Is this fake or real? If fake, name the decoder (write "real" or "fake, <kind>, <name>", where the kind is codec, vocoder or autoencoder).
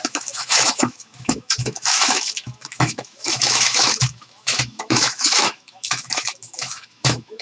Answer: fake, autoencoder, DAC-VAE